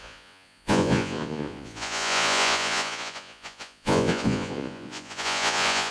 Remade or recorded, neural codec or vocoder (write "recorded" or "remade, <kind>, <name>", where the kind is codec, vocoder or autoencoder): remade, vocoder, Vocos